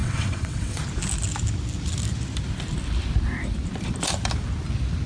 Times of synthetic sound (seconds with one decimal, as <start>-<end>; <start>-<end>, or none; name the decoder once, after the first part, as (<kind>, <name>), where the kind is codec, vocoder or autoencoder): 0.0-0.8 (vocoder, WaveNeXt)